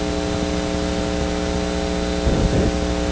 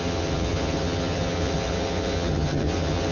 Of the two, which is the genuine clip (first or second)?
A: first